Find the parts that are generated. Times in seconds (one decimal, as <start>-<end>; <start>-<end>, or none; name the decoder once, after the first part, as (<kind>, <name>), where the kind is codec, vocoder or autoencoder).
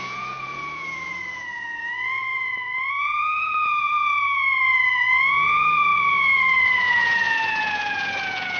0.0-8.6 (vocoder, Vocos)